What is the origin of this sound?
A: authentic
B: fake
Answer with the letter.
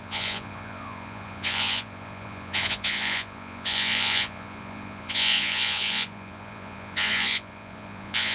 B